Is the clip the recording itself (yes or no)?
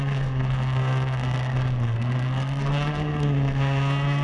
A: no